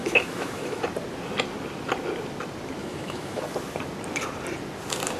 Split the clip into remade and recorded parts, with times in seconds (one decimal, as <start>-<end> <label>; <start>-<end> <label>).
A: 0.0-0.8 remade; 0.8-2.8 recorded; 2.8-3.4 remade; 3.4-5.2 recorded